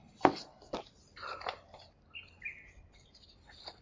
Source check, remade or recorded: recorded